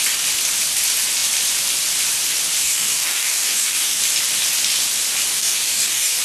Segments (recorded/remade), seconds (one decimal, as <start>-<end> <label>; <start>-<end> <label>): 0.0-2.6 recorded; 2.6-4.0 remade; 4.0-5.3 recorded; 5.3-6.2 remade